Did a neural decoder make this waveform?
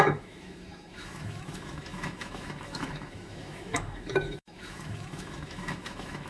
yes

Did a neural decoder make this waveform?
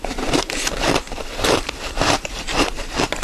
yes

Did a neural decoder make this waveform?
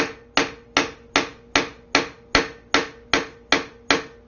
no